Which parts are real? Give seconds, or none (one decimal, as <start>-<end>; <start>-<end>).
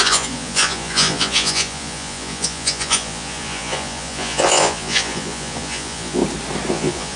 6.2-6.7